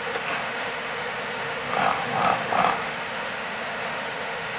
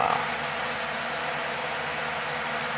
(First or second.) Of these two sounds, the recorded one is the second